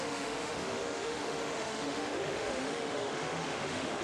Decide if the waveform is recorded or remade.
remade